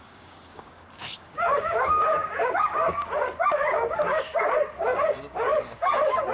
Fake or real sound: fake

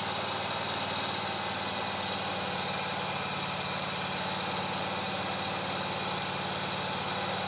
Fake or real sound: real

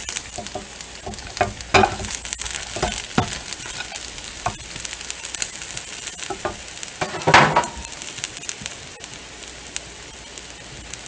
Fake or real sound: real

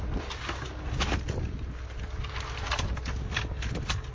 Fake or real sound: real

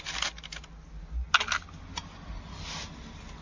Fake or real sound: real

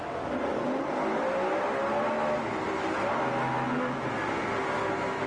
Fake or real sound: real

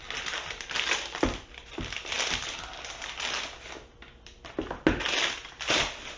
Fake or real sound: real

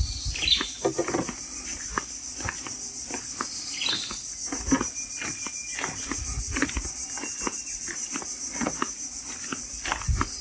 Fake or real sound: real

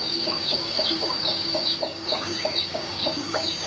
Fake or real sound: fake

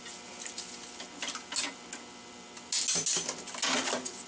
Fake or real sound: real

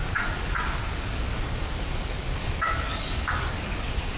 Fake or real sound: fake